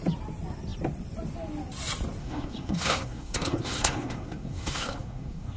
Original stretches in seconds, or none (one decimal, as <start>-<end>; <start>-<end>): 0.0-2.2